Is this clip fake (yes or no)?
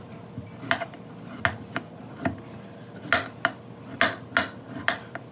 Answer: no